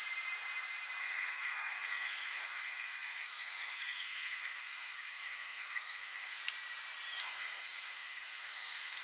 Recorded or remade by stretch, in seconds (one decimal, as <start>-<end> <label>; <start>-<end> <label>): 0.0-1.0 recorded; 1.0-6.4 remade; 6.4-7.2 recorded; 7.2-9.0 remade